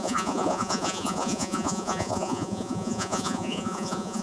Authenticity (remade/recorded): remade